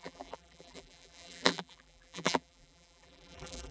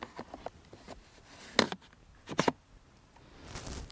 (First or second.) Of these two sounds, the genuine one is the second